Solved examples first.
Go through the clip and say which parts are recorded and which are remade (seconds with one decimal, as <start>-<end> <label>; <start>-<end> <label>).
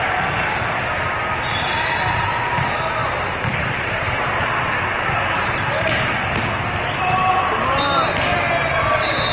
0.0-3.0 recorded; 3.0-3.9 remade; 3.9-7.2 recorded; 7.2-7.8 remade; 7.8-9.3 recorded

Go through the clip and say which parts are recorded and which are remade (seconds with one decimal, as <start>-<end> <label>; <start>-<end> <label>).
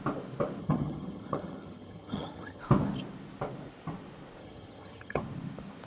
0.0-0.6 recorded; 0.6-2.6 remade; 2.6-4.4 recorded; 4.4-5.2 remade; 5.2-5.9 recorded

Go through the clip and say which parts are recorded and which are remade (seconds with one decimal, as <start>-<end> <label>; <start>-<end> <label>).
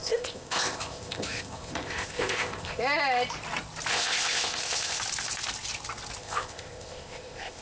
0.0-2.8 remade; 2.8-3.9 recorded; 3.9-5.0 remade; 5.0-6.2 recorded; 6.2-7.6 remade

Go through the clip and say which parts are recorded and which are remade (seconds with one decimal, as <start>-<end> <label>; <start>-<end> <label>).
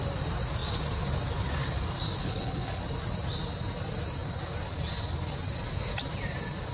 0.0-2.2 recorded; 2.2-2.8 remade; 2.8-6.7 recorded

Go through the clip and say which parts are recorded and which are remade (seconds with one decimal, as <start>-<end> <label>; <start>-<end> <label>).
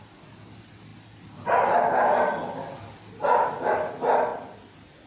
0.0-5.1 recorded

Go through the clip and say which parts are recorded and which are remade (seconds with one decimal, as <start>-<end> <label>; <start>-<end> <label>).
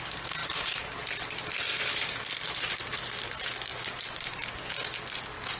0.0-0.4 recorded; 0.4-1.1 remade; 1.1-1.7 recorded; 1.7-2.2 remade; 2.2-5.6 recorded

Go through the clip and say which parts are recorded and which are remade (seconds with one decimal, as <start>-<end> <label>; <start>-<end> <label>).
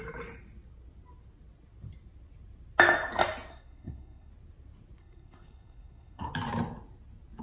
0.0-3.5 recorded; 3.5-4.3 remade; 4.3-5.0 recorded; 5.0-6.3 remade; 6.3-7.4 recorded